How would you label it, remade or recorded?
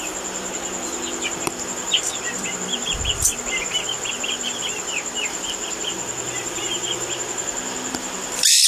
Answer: remade